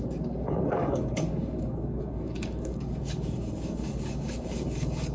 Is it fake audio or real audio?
fake